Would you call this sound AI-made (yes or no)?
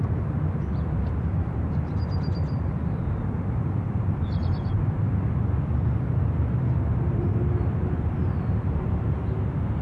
yes